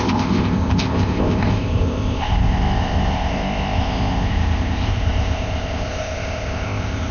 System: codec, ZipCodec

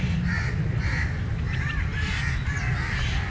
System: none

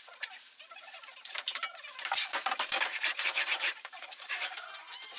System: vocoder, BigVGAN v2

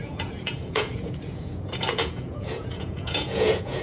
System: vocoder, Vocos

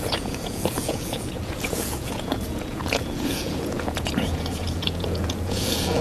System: vocoder, Vocos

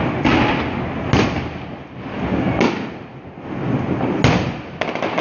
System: none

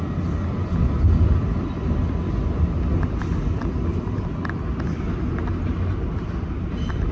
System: none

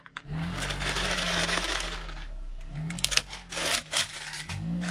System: codec, DAC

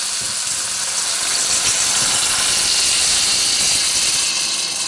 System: none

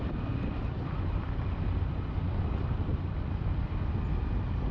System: vocoder, BigVGAN v2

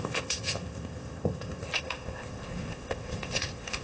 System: codec, ZipCodec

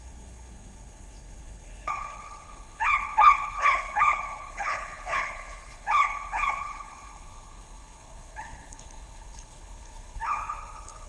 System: codec, HILCodec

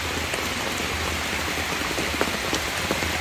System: none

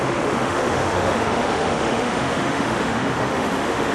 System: autoencoder, DAC-VAE